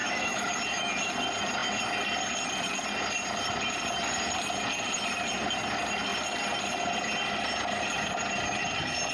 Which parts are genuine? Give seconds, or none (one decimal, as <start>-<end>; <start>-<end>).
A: 1.1-9.1